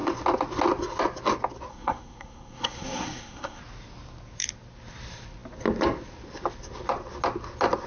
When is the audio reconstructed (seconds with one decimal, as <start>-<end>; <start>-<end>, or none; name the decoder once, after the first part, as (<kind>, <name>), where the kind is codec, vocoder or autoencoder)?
1.7-3.6 (codec, SNAC)